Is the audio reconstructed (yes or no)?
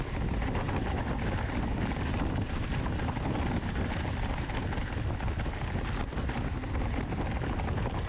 no